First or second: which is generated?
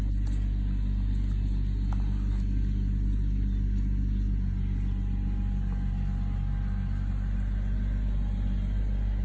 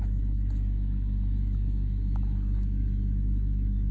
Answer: second